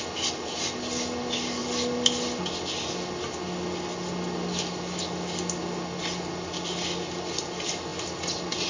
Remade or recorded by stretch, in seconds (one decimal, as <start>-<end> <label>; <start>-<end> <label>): 0.0-8.7 recorded